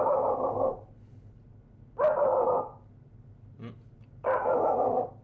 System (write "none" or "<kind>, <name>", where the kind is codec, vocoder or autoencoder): none